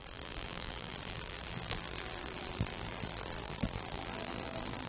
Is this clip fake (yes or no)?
yes